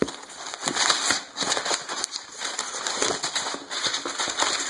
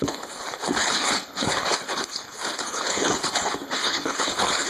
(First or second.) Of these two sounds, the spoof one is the second